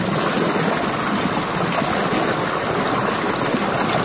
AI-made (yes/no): no